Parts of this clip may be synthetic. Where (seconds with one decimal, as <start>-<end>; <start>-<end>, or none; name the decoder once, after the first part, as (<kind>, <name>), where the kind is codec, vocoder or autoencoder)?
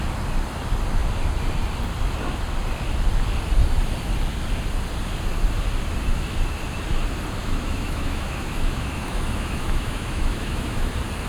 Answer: 7.4-10.9 (autoencoder, DAC-VAE)